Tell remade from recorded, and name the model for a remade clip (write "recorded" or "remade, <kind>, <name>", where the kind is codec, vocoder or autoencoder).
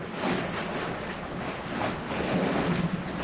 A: recorded